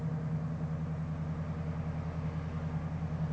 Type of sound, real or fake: real